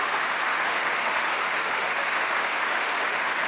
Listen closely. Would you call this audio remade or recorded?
remade